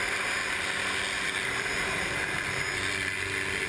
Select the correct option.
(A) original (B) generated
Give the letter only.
A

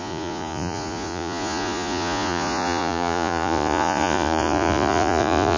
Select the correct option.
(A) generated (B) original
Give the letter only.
A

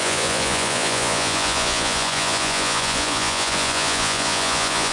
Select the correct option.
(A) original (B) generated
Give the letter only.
B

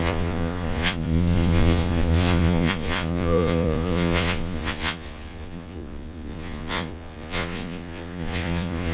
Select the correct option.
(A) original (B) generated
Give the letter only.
B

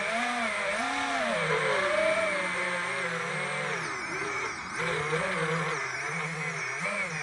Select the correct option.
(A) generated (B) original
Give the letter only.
B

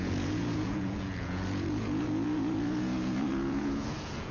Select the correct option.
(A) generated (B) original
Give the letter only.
A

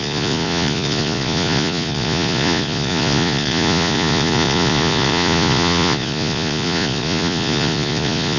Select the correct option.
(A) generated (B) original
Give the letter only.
A